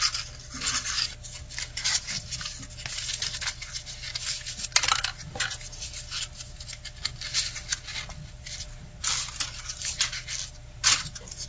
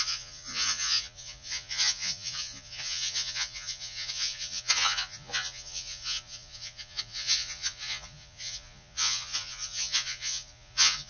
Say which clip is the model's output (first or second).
second